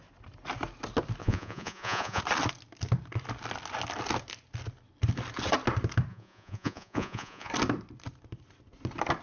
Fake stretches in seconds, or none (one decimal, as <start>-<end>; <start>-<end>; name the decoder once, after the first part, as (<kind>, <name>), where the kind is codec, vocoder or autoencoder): 1.2-2.2 (vocoder, Vocos); 6.1-7.5